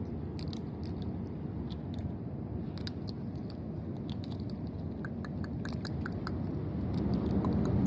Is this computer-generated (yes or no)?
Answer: no